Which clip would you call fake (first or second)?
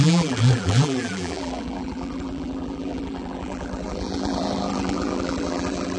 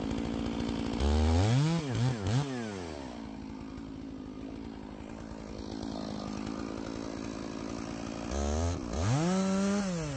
first